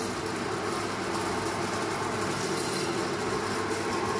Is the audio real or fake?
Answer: real